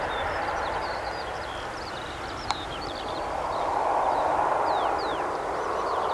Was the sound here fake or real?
real